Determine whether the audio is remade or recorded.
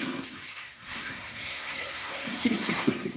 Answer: remade